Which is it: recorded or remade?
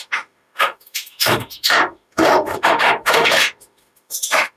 remade